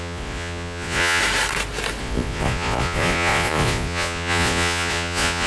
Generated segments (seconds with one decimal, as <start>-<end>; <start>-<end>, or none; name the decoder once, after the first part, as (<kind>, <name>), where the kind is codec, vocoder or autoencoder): 0.0-1.2 (vocoder, Vocos); 2.0-5.5

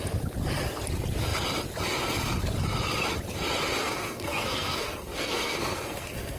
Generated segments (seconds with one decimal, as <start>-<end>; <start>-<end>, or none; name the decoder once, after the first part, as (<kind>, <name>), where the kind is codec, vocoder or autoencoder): 3.8-6.4 (codec, SNAC)